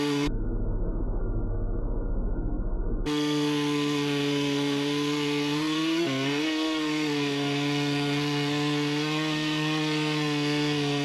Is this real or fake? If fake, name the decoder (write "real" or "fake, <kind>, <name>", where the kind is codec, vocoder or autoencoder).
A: fake, codec, SNAC